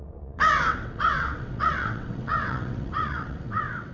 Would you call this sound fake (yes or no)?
yes